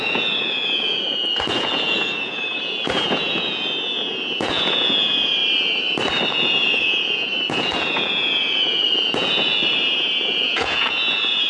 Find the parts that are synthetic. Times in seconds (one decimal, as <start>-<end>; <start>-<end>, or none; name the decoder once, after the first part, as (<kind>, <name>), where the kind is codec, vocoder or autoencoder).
0.0-5.4 (vocoder, Vocos); 6.3-11.5